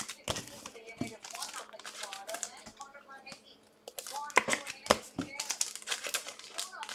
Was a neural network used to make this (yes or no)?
no